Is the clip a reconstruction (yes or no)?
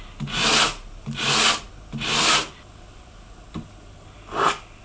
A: no